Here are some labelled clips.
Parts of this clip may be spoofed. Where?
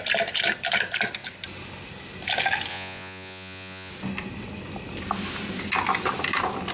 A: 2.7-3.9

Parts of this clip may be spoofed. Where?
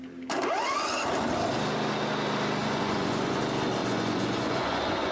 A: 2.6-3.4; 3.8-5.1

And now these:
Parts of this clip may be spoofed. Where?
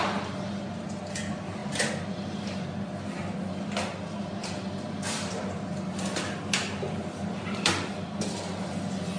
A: none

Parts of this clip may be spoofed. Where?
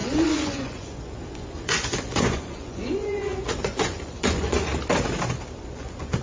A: 0.0-4.7; 5.6-6.2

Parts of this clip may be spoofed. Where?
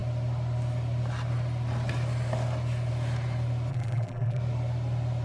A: 3.7-4.4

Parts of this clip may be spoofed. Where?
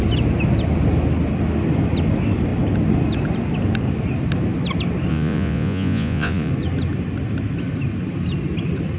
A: 5.1-6.5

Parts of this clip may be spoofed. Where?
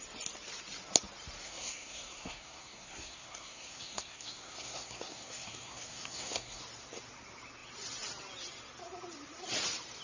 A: 1.4-6.6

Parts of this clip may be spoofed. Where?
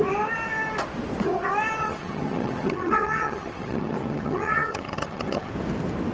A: 1.8-5.5